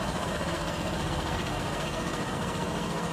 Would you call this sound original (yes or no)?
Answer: no